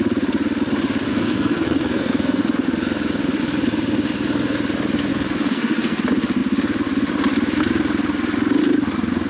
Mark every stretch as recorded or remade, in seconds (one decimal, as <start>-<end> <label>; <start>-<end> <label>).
0.0-1.1 recorded; 1.1-2.4 remade; 2.4-5.1 recorded; 5.1-6.0 remade; 6.0-9.3 recorded

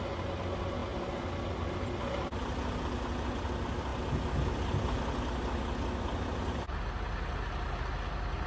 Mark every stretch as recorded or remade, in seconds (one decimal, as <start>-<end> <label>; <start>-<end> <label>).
0.0-8.5 recorded

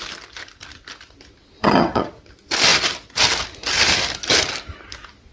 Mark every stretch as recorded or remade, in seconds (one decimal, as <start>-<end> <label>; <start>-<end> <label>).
0.0-1.6 recorded; 1.6-2.2 remade; 2.2-5.3 recorded

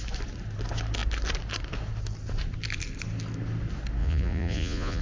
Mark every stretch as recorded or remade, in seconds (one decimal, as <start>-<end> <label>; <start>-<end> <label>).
0.0-4.0 recorded; 4.0-5.0 remade

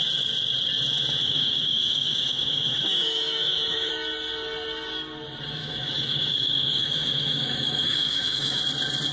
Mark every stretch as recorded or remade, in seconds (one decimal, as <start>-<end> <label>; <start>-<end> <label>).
0.0-1.2 recorded; 1.2-3.9 remade; 3.9-5.6 recorded; 5.6-8.6 remade; 8.6-9.1 recorded